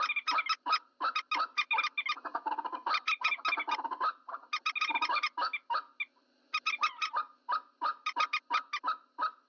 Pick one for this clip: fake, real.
real